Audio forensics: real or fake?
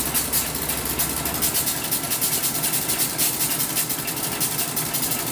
real